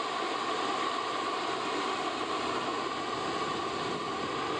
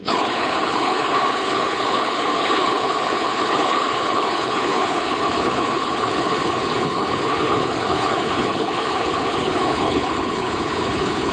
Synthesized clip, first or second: second